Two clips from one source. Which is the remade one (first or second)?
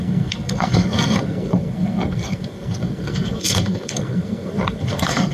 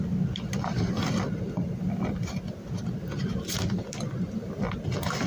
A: first